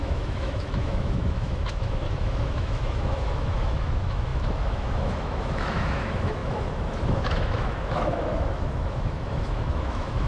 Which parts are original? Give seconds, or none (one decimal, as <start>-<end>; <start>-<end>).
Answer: none